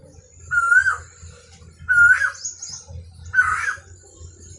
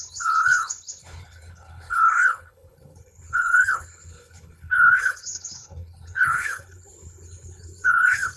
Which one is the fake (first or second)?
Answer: second